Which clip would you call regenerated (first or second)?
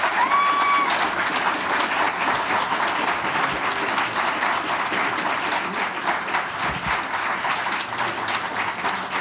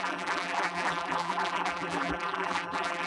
second